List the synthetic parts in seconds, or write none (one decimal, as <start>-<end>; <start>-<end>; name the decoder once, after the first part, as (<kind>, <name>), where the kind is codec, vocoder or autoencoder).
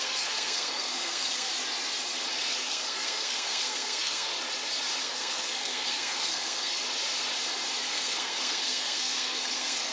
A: 0.0-1.5 (codec, SNAC); 2.3-4.3; 5.0-6.8; 7.8-9.9